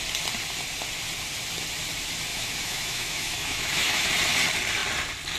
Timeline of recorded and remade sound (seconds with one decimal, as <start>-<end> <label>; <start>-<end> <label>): 0.0-2.3 recorded; 2.3-4.1 remade; 4.1-5.4 recorded